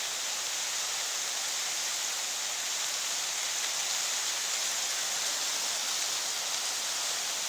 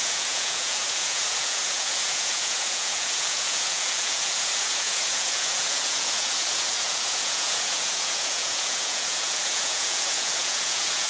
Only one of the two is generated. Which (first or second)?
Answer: second